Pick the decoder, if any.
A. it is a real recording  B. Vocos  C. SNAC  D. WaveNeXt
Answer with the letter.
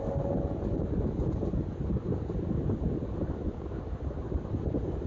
A